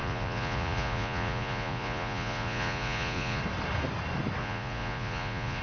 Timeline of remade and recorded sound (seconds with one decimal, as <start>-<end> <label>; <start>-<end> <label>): 0.0-3.4 remade; 3.4-4.4 recorded; 4.4-5.6 remade